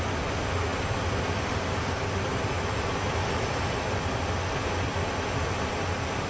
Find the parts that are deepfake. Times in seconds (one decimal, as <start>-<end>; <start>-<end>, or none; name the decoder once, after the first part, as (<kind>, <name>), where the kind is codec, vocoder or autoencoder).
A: none